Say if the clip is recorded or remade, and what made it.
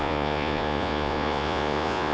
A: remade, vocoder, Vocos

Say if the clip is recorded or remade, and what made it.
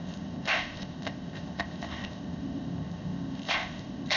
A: remade, codec, ZipCodec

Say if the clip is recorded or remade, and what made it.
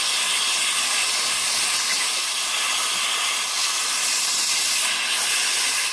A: recorded